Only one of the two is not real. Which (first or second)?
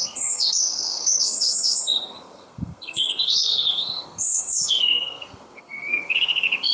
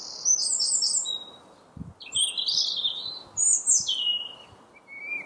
first